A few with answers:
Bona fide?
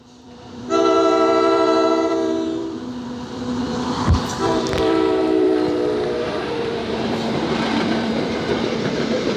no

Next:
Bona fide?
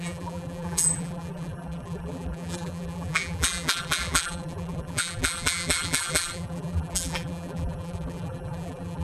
no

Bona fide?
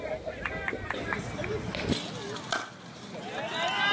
yes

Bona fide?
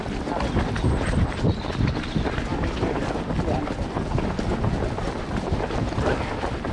yes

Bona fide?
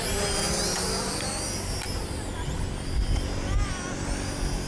yes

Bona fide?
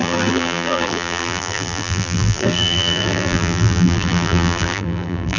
no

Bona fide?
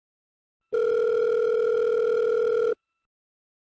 yes